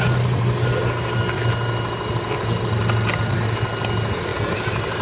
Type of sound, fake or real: real